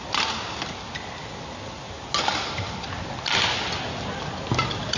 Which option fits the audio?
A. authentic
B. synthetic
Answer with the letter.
A